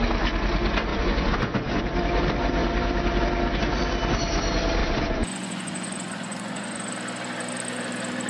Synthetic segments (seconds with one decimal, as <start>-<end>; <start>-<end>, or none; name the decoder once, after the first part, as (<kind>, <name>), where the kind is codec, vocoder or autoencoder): 0.9-1.8 (vocoder, Vocos); 4.8-6.9